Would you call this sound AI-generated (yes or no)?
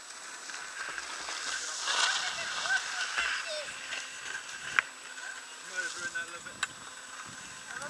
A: no